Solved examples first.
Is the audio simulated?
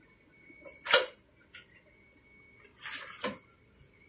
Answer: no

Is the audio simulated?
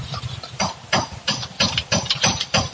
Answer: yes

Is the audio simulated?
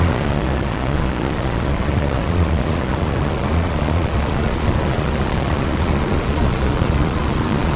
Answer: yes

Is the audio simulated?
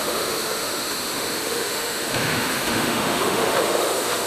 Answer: yes